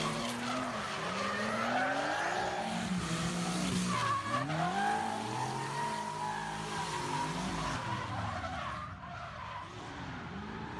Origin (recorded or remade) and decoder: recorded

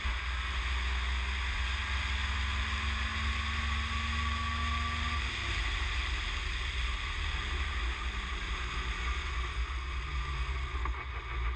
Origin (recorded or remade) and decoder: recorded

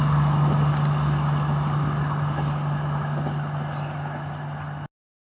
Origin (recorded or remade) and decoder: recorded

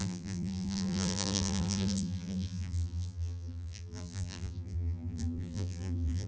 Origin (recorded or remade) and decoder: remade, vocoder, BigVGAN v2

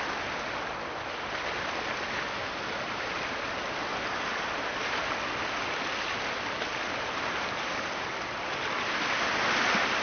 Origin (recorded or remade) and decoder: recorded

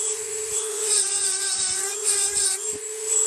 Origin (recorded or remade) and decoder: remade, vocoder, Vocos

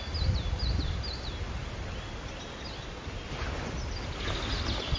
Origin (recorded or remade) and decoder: recorded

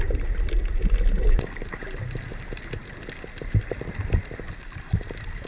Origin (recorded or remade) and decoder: recorded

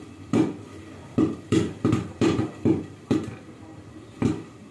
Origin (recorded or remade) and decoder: remade, vocoder, BigVGAN v2